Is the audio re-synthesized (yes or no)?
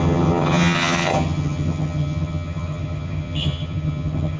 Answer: yes